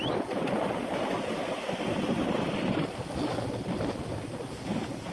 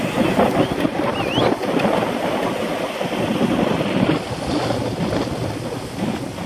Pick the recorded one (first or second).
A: second